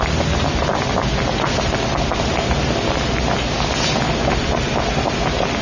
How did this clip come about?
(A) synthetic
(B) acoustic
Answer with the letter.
B